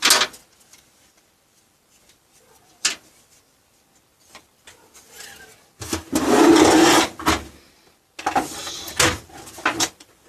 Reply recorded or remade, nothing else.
recorded